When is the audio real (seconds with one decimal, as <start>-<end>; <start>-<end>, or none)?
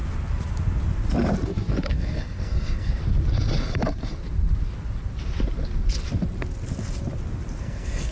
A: 0.0-1.9; 3.0-7.6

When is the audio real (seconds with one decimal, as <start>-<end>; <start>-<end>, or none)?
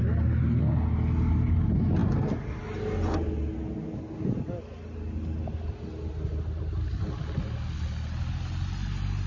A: 0.0-9.3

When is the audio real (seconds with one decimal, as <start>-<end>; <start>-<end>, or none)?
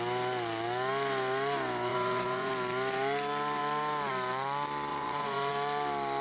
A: 0.0-1.9; 2.5-4.9; 5.5-6.2